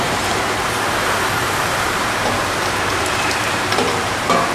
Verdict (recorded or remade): remade